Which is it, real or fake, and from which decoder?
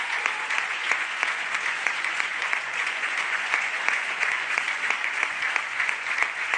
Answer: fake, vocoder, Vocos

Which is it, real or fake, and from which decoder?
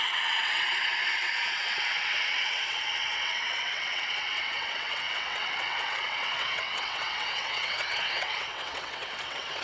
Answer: fake, vocoder, WaveNeXt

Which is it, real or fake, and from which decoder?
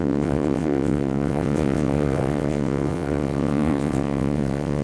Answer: fake, vocoder, WaveNeXt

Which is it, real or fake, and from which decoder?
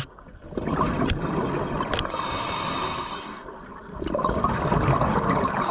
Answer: real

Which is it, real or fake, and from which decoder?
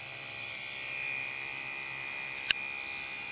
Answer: real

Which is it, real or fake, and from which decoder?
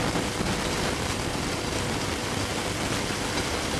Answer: real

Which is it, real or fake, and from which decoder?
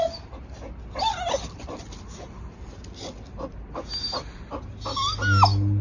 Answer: real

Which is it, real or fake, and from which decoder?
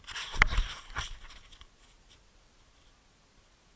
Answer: real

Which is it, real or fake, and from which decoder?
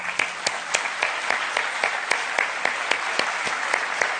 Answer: real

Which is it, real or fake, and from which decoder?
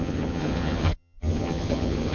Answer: fake, vocoder, HiFi-GAN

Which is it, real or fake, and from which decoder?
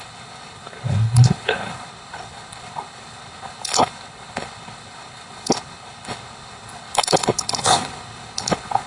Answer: fake, codec, HILCodec